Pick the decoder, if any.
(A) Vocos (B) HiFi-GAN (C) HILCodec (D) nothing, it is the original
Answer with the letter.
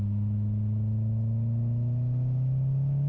D